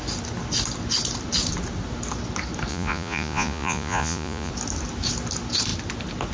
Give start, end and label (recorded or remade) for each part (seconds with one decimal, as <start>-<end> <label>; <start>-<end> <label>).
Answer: 0.0-2.7 recorded; 2.7-4.5 remade; 4.5-6.3 recorded